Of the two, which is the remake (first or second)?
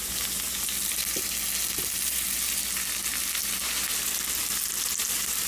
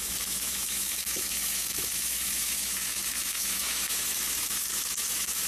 second